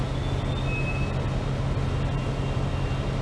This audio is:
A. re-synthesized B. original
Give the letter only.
B